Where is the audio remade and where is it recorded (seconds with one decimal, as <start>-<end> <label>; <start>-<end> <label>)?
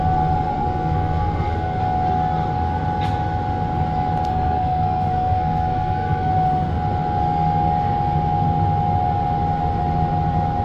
0.0-0.5 recorded; 0.5-1.8 remade; 1.8-4.3 recorded; 4.3-6.3 remade; 6.3-10.6 recorded